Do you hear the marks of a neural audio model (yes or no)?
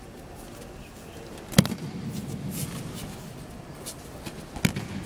no